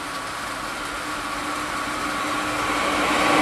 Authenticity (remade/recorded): recorded